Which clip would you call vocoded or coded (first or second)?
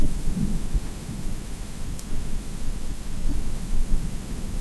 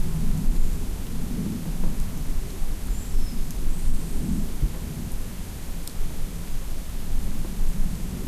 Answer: first